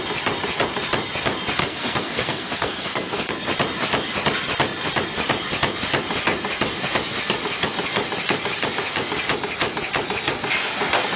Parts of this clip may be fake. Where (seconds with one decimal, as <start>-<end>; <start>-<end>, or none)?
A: 1.6-3.3

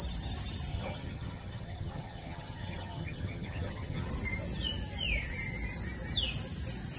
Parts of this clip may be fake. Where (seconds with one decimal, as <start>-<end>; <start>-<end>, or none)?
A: 0.7-4.1

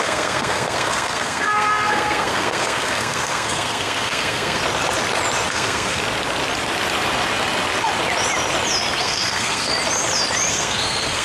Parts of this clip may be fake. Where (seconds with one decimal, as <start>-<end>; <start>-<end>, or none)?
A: 0.0-4.6; 5.5-6.0; 9.0-9.7; 10.5-11.2

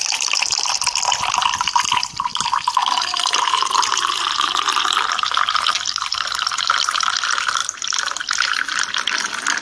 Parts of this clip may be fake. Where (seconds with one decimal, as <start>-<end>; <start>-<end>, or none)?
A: none

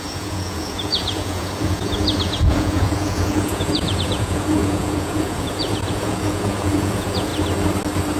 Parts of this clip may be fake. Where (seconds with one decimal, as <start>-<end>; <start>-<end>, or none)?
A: 0.0-7.3

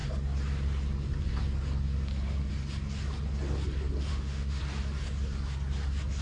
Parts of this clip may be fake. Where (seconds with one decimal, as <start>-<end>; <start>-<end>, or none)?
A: 4.1-4.6

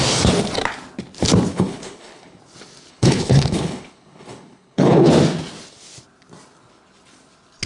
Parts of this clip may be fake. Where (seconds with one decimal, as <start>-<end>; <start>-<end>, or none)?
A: 1.5-2.4; 2.9-5.1